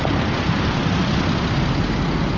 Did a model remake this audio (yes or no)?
no